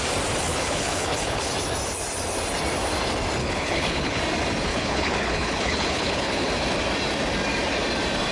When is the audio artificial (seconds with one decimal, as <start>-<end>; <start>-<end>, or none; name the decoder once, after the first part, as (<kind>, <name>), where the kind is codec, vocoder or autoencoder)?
0.5-1.5 (codec, HILCodec); 3.4-4.2; 4.7-6.5